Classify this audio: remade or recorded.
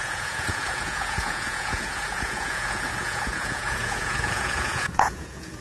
remade